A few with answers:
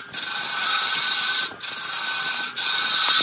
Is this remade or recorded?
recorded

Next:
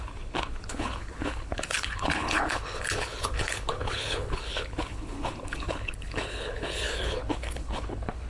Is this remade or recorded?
remade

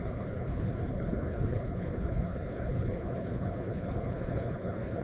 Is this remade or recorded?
remade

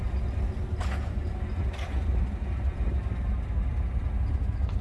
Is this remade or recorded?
recorded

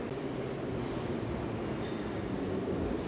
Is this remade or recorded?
recorded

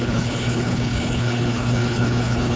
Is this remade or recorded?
remade